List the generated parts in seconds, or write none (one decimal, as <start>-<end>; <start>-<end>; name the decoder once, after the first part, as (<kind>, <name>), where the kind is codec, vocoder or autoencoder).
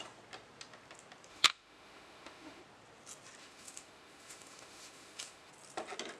1.3-2.6 (autoencoder, DAC-VAE); 3.4-5.5